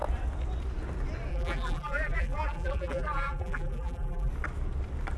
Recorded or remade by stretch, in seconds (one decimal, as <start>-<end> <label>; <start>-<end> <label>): 0.0-1.3 recorded; 1.3-4.3 remade; 4.3-5.2 recorded